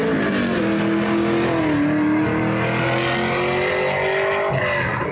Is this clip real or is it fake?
real